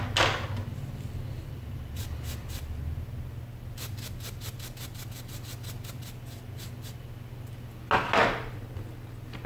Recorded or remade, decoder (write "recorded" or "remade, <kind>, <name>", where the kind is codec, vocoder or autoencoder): recorded